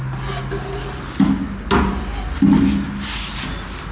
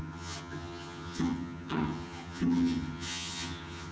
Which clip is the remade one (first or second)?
second